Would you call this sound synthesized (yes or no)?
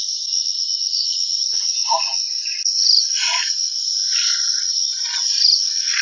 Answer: no